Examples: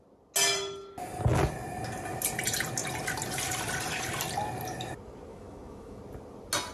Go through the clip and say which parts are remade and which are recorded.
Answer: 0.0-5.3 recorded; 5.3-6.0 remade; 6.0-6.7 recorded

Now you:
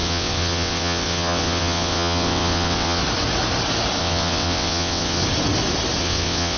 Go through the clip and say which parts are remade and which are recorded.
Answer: 0.0-3.0 remade; 3.0-4.0 recorded; 4.0-5.2 remade; 5.2-6.0 recorded; 6.0-6.6 remade

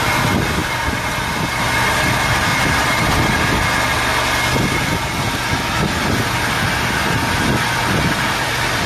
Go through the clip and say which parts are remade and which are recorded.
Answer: 0.0-0.6 recorded; 0.6-1.1 remade; 1.1-2.5 recorded; 2.5-3.1 remade; 3.1-8.9 recorded